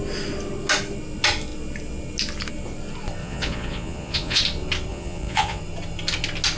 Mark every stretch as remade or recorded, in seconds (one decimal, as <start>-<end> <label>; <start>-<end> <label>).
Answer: 0.0-3.2 recorded; 3.2-4.4 remade; 4.4-4.9 recorded; 4.9-5.6 remade; 5.6-6.6 recorded